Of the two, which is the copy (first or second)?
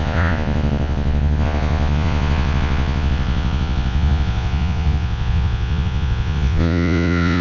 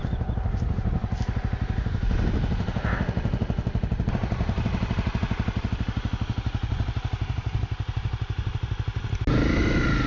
first